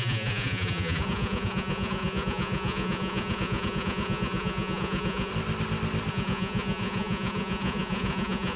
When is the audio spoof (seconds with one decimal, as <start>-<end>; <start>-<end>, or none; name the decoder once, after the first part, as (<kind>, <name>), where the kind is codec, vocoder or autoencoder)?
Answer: 0.0-5.3 (vocoder, Vocos); 6.1-8.6